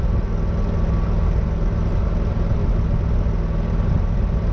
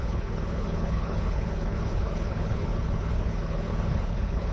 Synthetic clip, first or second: second